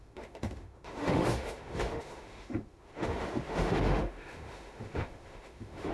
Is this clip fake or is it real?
fake